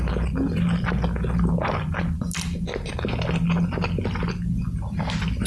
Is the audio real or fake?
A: real